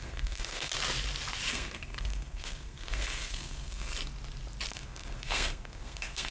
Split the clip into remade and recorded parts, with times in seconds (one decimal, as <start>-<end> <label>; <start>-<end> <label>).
0.0-0.7 remade; 0.7-1.5 recorded; 1.5-3.9 remade; 3.9-4.7 recorded; 4.7-6.3 remade